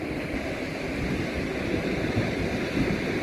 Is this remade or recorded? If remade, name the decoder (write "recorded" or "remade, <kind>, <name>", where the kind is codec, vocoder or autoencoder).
recorded